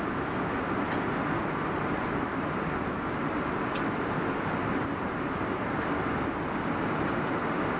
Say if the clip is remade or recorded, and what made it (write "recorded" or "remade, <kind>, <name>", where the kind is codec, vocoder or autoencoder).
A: recorded